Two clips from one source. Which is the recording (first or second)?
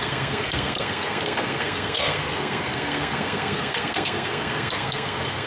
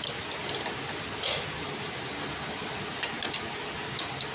second